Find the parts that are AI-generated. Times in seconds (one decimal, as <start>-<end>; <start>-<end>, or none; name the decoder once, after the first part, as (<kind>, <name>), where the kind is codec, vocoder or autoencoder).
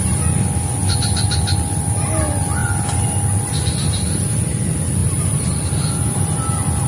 none